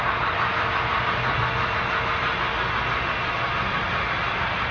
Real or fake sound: real